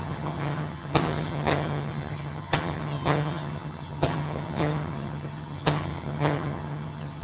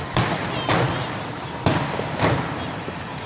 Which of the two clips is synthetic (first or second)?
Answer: first